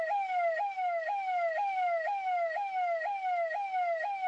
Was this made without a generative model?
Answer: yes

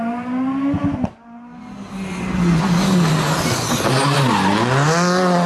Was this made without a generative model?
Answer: yes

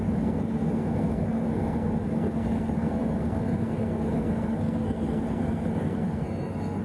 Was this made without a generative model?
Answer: no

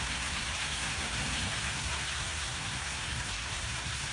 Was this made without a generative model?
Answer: no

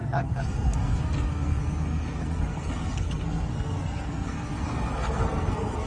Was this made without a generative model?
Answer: no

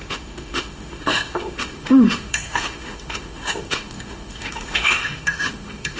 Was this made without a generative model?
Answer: no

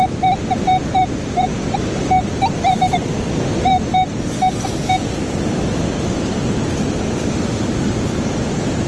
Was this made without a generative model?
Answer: yes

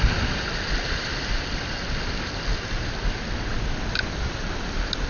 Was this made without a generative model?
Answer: yes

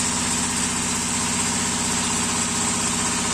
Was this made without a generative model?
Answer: yes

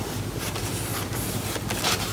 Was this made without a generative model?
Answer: yes